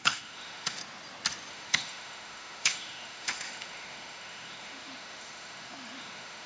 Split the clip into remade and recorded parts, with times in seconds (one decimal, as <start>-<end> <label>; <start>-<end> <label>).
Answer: 0.0-0.8 remade; 0.8-1.5 recorded; 1.5-6.5 remade